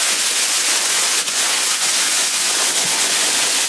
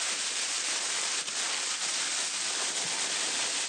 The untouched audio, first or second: second